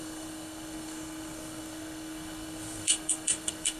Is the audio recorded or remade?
remade